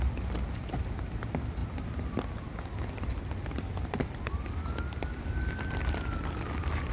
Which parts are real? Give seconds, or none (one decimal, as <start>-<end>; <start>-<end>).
0.0-6.9